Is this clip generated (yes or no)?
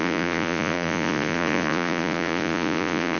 yes